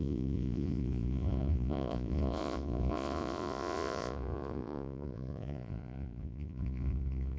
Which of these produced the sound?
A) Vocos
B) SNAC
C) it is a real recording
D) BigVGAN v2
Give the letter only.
A